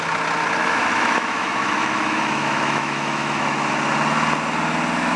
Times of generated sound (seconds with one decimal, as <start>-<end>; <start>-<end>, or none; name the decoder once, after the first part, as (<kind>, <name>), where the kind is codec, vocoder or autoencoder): 0.6-3.7 (autoencoder, DAC-VAE)